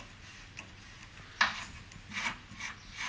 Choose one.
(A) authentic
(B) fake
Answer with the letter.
A